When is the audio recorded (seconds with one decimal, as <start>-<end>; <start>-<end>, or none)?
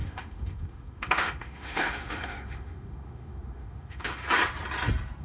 4.2-5.2